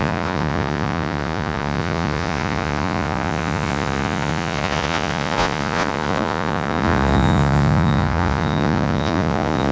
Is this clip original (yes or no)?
no